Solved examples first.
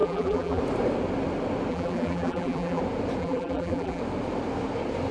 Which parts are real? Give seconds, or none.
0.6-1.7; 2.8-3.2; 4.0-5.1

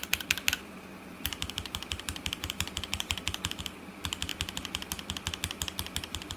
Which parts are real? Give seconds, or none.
0.0-0.9; 3.6-6.4

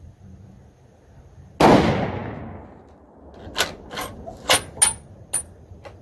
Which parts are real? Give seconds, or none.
0.0-6.0